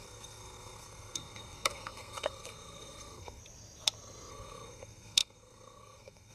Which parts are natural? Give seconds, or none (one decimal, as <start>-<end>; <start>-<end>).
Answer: 3.4-4.3